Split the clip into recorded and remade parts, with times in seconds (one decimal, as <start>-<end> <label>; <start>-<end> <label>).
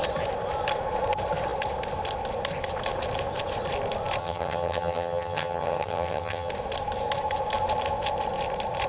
0.0-4.2 recorded; 4.2-6.5 remade; 6.5-8.9 recorded